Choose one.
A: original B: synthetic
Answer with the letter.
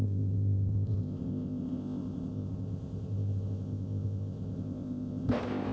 B